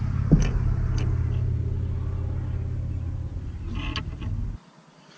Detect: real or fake real